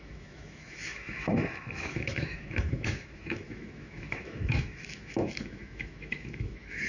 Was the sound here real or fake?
fake